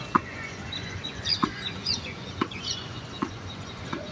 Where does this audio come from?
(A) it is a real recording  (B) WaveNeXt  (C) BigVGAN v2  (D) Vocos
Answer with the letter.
D